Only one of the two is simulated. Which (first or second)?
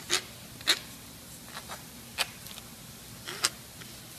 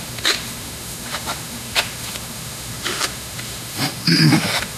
second